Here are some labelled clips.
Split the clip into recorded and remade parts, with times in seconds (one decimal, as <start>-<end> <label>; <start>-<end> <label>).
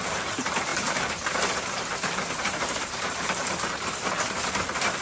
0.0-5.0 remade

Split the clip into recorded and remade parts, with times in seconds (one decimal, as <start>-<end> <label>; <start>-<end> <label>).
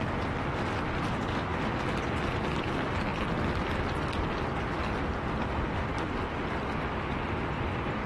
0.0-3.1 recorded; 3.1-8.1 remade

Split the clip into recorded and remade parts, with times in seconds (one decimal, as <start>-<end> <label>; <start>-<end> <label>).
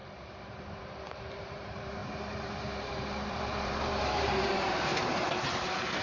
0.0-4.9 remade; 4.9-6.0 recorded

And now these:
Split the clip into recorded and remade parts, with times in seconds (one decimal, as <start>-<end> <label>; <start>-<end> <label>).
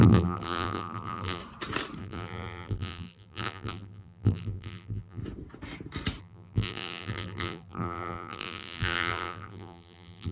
0.0-1.4 remade; 1.4-2.0 recorded; 2.0-5.2 remade; 5.2-6.2 recorded; 6.2-10.3 remade